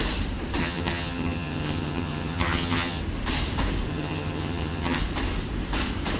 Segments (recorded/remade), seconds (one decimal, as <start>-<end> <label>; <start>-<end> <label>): 0.0-0.6 recorded; 0.6-3.0 remade; 3.0-3.9 recorded; 3.9-5.0 remade; 5.0-6.2 recorded